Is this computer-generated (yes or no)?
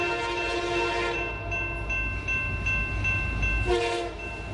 no